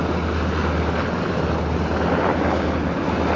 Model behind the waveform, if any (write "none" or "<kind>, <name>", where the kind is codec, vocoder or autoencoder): none